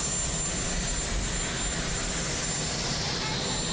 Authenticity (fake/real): real